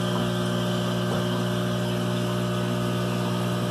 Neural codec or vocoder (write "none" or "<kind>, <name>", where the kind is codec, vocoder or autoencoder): none